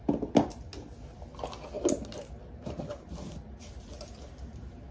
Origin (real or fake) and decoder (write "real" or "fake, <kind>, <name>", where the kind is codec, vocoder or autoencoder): real